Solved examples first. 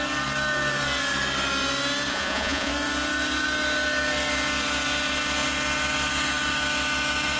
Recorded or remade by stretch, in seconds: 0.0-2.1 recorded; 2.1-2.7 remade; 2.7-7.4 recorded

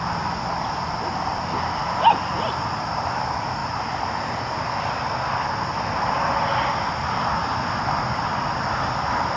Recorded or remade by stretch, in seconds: 0.0-9.4 recorded

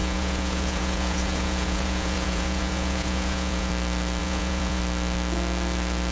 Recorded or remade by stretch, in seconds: 0.0-3.7 remade; 3.7-4.2 recorded; 4.2-4.8 remade; 4.8-6.1 recorded

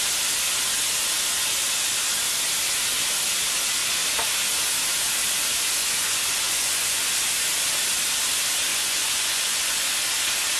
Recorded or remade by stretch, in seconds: 0.0-5.8 recorded; 5.8-7.1 remade; 7.1-8.7 recorded; 8.7-9.9 remade; 9.9-10.6 recorded

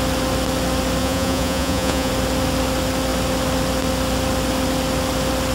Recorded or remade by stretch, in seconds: 0.0-1.0 recorded; 1.0-2.1 remade; 2.1-5.5 recorded

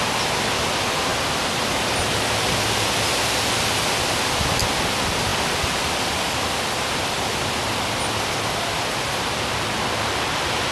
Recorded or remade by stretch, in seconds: 0.0-10.7 recorded